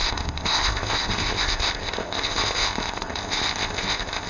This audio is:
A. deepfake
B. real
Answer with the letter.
A